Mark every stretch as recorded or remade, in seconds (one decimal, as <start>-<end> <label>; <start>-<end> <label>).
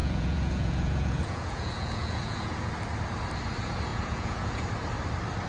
0.0-2.7 remade; 2.7-3.9 recorded; 3.9-4.6 remade; 4.6-5.5 recorded